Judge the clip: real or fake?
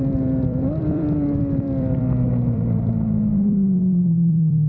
fake